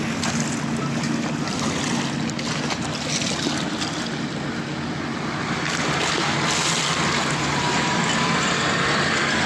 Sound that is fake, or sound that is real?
real